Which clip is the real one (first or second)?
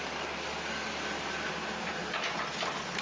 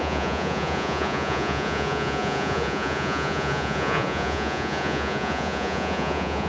first